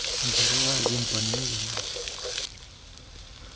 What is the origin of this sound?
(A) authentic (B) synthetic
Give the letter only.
A